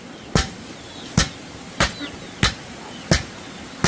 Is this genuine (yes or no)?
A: yes